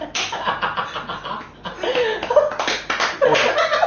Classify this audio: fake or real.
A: real